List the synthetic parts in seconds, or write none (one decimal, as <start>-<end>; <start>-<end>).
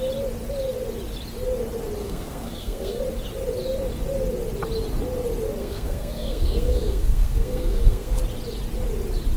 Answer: 2.0-3.0; 5.6-8.2